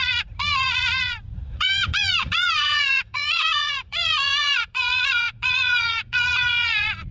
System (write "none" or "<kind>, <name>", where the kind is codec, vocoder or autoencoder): vocoder, Vocos